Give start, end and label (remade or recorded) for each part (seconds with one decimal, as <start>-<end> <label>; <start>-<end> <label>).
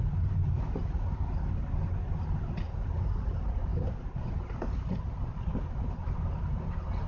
0.0-7.1 recorded